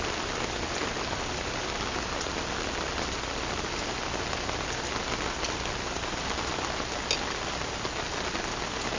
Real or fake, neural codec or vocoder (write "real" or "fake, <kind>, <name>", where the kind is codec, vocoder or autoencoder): real